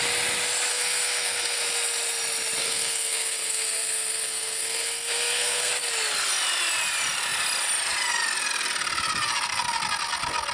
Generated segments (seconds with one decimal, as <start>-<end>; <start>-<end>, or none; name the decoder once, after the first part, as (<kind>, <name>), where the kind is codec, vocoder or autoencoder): 0.7-1.6 (codec, SNAC); 2.6-5.7

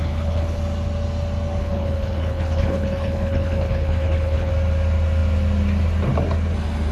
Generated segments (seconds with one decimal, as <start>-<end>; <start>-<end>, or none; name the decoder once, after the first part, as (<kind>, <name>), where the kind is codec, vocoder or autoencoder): 0.0-0.6 (codec, HILCodec); 1.6-4.5

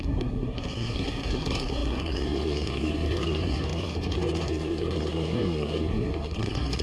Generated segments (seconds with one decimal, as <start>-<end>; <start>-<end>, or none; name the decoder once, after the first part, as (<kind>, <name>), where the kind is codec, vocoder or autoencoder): 0.0-6.8 (codec, SNAC)